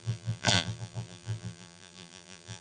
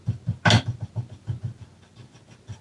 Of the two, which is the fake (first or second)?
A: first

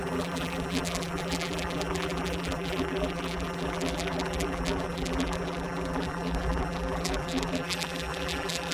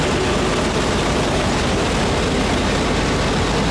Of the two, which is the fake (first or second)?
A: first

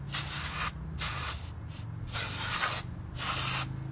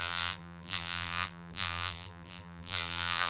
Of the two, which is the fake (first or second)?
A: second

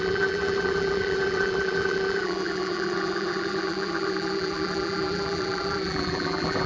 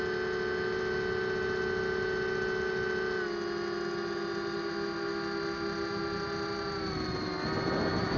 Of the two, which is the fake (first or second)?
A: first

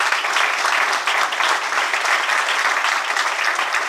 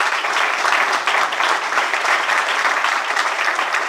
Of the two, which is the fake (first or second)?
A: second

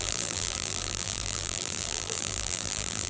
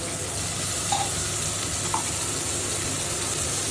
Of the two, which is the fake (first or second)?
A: first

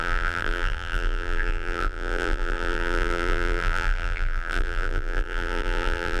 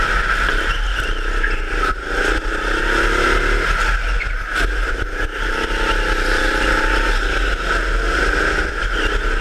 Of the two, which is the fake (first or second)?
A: first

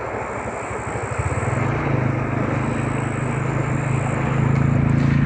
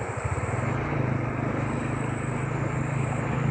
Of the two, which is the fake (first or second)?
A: second